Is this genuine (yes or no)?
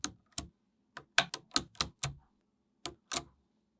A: yes